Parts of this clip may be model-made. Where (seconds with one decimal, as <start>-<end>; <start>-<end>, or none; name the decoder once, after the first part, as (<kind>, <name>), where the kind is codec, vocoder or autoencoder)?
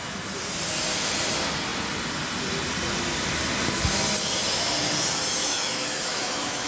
5.4-6.7 (autoencoder, DAC-VAE)